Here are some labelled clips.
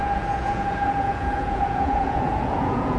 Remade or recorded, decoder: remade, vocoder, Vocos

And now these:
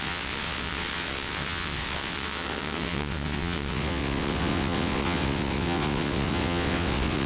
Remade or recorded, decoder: remade, vocoder, WaveNeXt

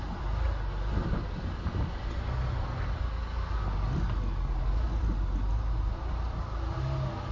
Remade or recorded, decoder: recorded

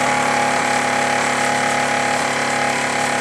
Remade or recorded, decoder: recorded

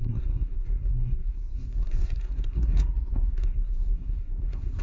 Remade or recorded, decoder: remade, codec, SNAC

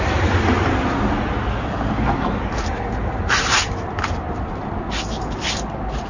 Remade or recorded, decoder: recorded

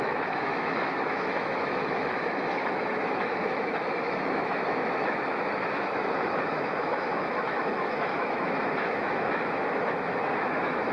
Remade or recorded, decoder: remade, autoencoder, DAC-VAE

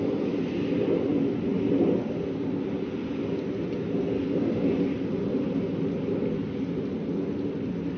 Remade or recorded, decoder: recorded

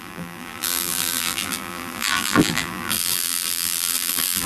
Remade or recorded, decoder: remade, vocoder, BigVGAN v2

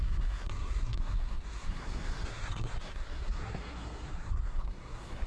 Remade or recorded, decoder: remade, codec, SNAC